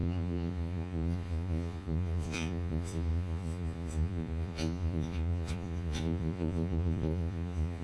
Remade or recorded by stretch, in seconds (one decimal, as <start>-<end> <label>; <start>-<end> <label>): 0.0-7.8 remade